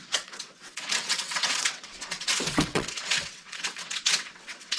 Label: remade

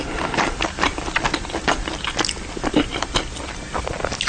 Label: recorded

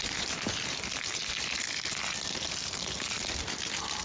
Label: recorded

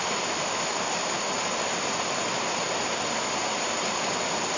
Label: recorded